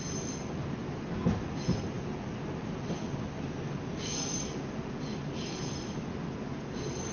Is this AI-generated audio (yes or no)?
no